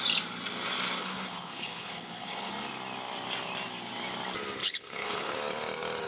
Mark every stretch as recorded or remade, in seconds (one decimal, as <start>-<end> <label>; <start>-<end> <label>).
0.0-1.0 recorded; 1.0-2.5 remade; 2.5-4.6 recorded; 4.6-5.4 remade; 5.4-6.1 recorded

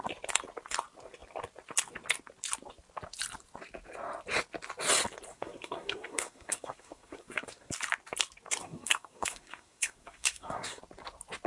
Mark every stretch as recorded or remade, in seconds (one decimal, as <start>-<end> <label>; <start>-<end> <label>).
0.0-5.3 recorded; 5.3-7.7 remade; 7.7-8.6 recorded; 8.6-10.8 remade; 10.8-11.5 recorded

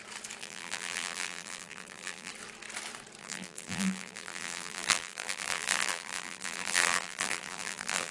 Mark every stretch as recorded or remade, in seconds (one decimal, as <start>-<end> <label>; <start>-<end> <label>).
0.0-0.4 recorded; 0.4-2.3 remade; 2.3-3.2 recorded; 3.2-8.1 remade

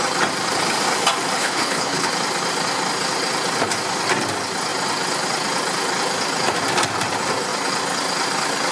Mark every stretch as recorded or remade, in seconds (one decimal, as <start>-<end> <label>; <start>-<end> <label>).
0.0-1.4 recorded; 1.4-2.1 remade; 2.1-8.7 recorded

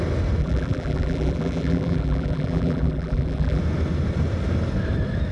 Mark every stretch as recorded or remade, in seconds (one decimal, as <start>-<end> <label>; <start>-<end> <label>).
0.0-0.4 recorded; 0.4-3.6 remade; 3.6-5.3 recorded